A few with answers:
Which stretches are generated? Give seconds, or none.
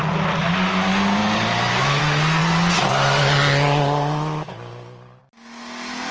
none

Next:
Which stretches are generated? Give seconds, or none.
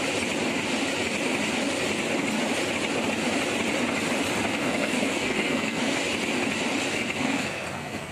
4.5-6.0 (codec, SNAC); 6.9-8.1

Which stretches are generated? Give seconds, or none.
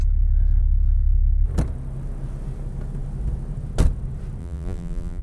4.4-5.2 (vocoder, BigVGAN v2)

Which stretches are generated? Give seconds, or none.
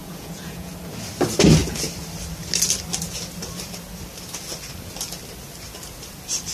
0.0-0.7 (vocoder, Vocos)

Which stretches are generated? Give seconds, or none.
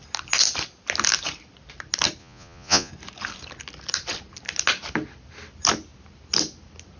2.2-2.9 (vocoder, Vocos)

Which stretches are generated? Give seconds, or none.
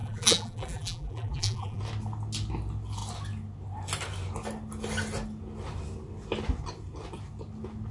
0.0-1.8 (vocoder, BigVGAN v2)